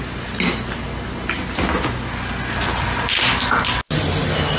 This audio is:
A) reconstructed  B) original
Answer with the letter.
B